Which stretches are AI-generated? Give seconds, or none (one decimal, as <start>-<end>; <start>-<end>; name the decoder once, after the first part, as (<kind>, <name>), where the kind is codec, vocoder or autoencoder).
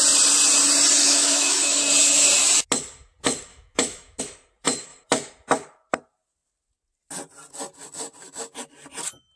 1.0-1.8 (autoencoder, DAC-VAE); 3.5-4.2